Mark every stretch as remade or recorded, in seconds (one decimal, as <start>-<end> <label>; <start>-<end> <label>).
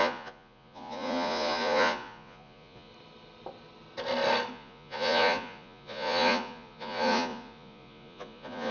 0.0-2.9 remade; 2.9-4.5 recorded; 4.5-8.7 remade